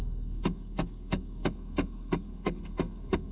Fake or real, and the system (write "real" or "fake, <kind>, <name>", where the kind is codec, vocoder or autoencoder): fake, codec, SNAC